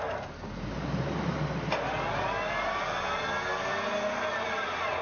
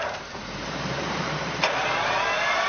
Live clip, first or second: first